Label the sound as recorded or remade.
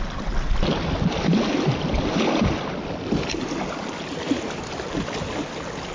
recorded